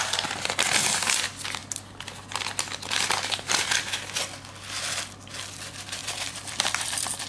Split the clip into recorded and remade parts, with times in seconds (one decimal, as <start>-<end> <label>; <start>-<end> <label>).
0.0-6.0 recorded; 6.0-7.3 remade